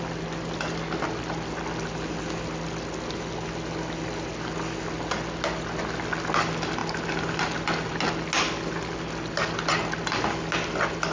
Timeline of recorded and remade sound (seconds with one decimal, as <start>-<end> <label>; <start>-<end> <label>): 0.0-11.1 recorded